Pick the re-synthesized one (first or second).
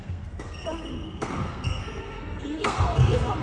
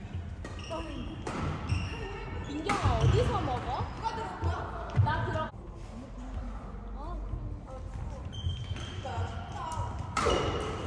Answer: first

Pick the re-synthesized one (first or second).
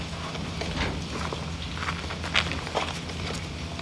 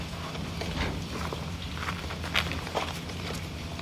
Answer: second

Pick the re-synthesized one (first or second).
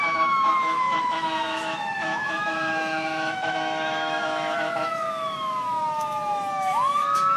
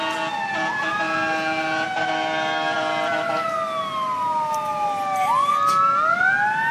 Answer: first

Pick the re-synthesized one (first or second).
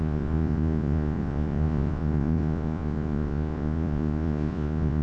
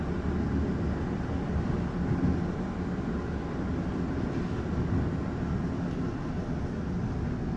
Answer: first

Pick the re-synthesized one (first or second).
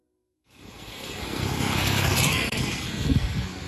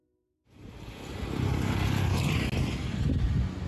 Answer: first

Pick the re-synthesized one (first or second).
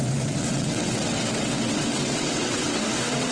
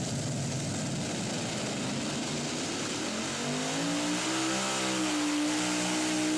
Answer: first